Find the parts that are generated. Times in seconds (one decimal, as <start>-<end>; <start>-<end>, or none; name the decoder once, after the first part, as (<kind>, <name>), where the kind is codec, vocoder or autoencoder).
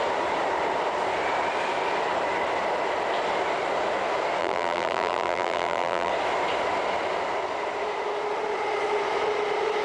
4.4-6.1 (vocoder, BigVGAN v2)